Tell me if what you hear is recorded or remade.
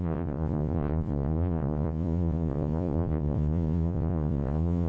remade